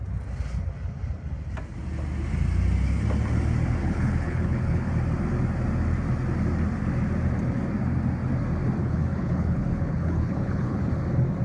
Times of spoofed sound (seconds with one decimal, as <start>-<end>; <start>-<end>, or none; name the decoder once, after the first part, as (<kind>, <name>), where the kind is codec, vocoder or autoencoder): 3.8-4.9 (codec, HILCodec); 8.8-10.9